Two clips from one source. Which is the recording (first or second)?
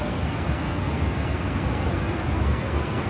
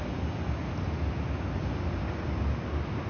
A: second